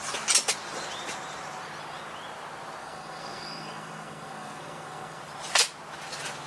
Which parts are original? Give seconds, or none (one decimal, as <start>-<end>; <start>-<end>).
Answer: 0.0-2.8; 5.2-6.5